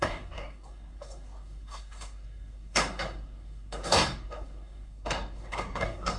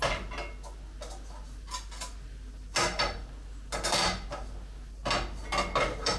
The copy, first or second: first